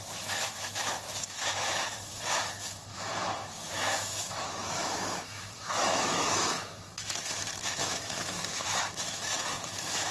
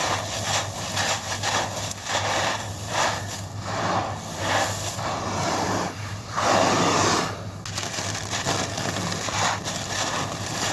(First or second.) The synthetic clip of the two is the first